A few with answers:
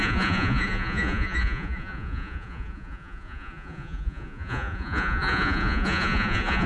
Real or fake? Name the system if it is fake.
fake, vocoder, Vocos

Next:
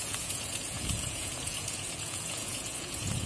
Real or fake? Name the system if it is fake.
fake, vocoder, Vocos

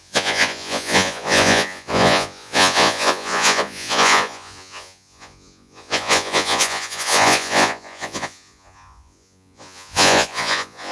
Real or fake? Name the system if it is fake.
fake, vocoder, Vocos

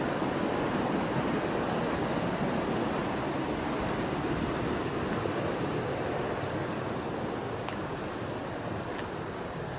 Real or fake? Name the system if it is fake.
real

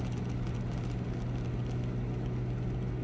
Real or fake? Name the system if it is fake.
real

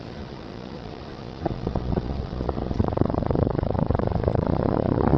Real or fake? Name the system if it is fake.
fake, vocoder, Vocos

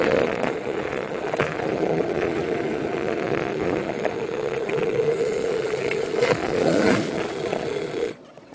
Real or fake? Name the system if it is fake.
fake, vocoder, Vocos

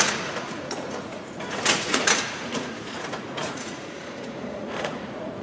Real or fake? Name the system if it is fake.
fake, vocoder, Vocos